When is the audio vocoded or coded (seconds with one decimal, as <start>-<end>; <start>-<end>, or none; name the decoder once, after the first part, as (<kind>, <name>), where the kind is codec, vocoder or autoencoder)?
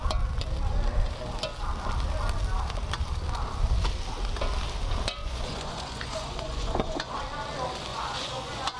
5.2-7.2 (vocoder, Vocos); 7.9-8.8